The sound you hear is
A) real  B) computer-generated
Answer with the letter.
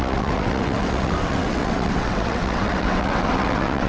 B